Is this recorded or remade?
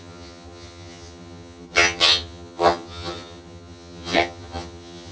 remade